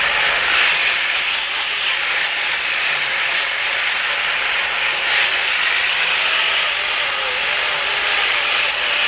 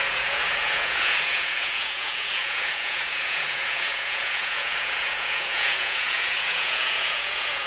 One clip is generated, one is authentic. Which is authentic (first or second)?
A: first